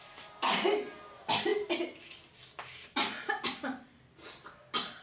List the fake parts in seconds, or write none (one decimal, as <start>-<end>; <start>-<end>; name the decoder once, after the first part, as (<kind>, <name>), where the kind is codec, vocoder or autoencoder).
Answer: none